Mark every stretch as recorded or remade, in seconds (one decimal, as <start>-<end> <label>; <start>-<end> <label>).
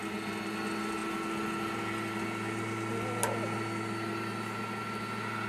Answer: 0.0-5.5 recorded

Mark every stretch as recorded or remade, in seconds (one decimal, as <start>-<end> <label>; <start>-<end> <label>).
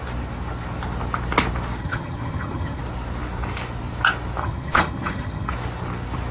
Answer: 0.0-1.8 recorded; 1.8-2.8 remade; 2.8-4.4 recorded; 4.4-5.5 remade; 5.5-6.3 recorded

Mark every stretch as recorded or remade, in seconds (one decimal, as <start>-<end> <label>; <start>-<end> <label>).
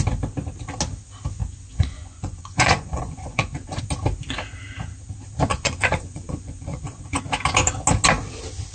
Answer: 0.0-1.4 recorded; 1.4-3.8 remade; 3.8-5.5 recorded; 5.5-7.2 remade; 7.2-8.7 recorded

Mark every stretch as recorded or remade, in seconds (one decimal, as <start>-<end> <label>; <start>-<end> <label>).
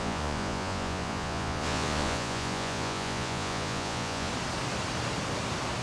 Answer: 0.0-4.3 remade; 4.3-5.8 recorded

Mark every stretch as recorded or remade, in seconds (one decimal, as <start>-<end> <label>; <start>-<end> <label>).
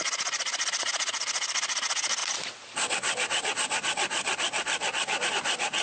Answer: 0.0-5.8 recorded